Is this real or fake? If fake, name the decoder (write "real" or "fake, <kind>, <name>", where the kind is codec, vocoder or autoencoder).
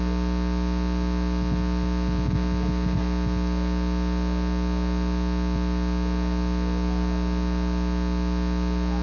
real